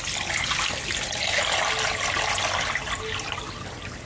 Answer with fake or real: real